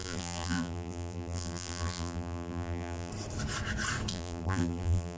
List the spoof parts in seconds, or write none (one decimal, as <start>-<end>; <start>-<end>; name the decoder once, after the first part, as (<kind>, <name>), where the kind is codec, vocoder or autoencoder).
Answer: 0.0-3.1 (vocoder, BigVGAN v2); 4.1-5.2